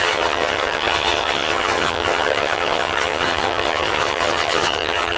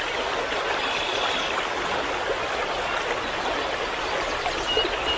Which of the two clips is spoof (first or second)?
first